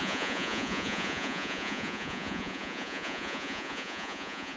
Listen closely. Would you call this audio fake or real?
fake